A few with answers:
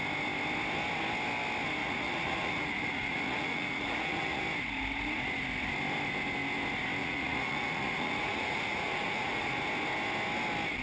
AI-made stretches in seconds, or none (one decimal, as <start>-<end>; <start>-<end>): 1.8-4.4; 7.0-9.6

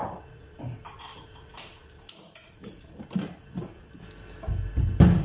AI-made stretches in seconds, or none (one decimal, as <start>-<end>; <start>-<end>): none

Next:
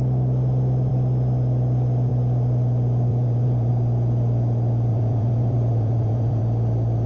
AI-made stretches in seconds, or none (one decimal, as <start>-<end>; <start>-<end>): 3.1-3.7; 4.9-6.4